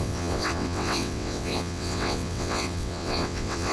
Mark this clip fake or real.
fake